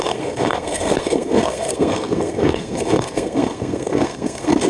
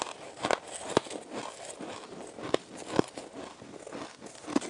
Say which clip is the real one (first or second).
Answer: second